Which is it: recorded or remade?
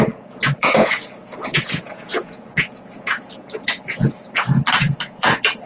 remade